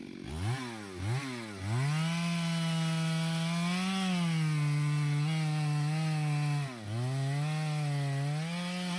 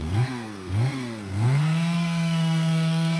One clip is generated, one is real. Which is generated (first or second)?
second